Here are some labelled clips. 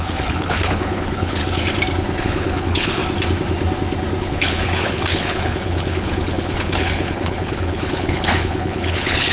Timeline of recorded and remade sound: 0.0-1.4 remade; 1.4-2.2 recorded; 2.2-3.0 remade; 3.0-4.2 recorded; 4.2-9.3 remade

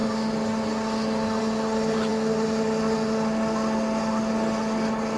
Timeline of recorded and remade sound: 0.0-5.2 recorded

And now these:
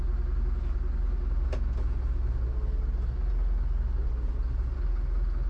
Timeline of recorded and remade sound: 0.0-5.5 recorded